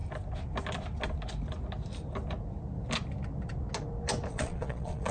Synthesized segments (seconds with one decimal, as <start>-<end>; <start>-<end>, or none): 4.3-5.1